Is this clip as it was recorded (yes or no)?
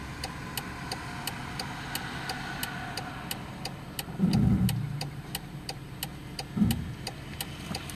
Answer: yes